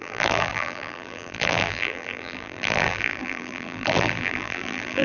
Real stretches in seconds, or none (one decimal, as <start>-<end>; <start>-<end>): none